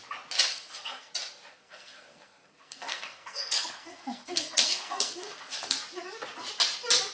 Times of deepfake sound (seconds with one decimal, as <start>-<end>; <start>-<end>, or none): 0.5-1.1; 1.5-5.8

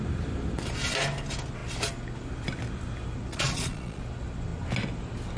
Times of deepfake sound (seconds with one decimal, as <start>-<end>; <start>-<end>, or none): 3.3-4.0

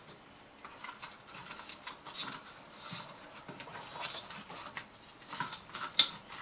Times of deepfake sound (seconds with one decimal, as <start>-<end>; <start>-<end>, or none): none

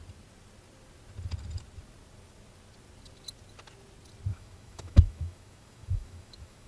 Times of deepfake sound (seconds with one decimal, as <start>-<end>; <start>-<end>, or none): 4.3-6.7

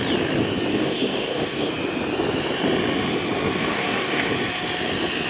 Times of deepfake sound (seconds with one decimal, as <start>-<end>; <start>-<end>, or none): 0.7-1.7; 3.5-4.3

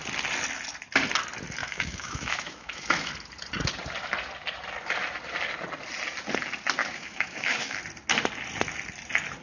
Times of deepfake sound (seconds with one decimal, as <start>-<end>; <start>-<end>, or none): 1.6-3.1; 6.8-7.8

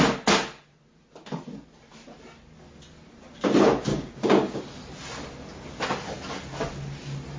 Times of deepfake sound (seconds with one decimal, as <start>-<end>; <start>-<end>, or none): 3.9-4.6